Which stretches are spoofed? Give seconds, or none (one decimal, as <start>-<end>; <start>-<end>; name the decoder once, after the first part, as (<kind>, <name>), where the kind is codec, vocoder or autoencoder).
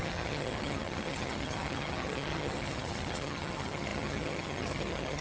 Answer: 0.0-5.2 (vocoder, HiFi-GAN)